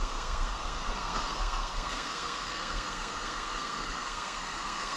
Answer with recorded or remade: remade